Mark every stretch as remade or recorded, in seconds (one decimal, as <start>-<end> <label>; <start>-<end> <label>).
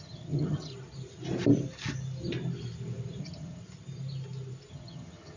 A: 0.0-0.7 remade; 0.7-3.2 recorded; 3.2-3.6 remade; 3.6-4.7 recorded; 4.7-5.4 remade